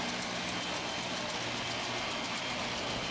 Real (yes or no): yes